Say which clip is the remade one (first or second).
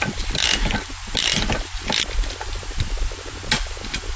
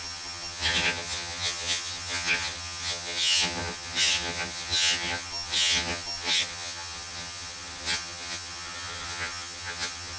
second